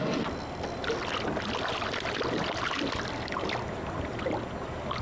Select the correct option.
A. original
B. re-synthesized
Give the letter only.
A